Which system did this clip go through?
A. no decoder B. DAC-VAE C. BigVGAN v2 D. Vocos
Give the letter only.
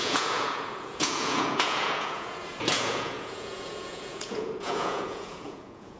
D